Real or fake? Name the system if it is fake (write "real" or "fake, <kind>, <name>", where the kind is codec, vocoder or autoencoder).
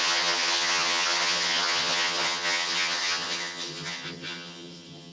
fake, vocoder, HiFi-GAN